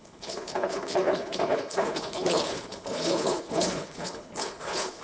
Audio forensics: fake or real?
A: fake